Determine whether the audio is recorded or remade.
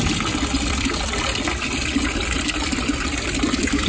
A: recorded